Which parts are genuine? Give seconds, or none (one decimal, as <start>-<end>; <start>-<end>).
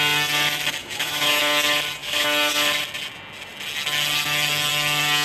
0.0-0.8; 1.4-2.0; 2.5-5.2